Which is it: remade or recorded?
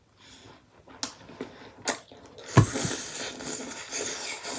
recorded